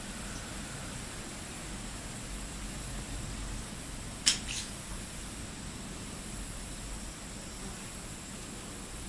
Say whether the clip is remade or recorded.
remade